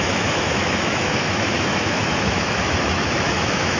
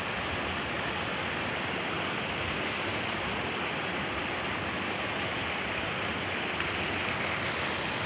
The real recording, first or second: second